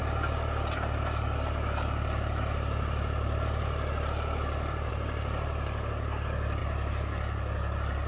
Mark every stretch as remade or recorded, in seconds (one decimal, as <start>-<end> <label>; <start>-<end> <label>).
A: 0.0-8.1 recorded